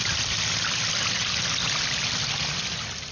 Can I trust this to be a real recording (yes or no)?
yes